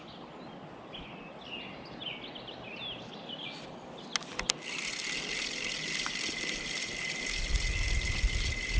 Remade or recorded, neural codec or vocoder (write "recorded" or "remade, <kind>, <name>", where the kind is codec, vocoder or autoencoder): recorded